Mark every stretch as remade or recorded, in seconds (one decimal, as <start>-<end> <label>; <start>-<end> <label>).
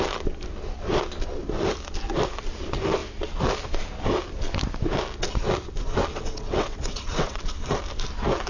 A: 0.0-6.1 recorded; 6.1-7.4 remade; 7.4-8.5 recorded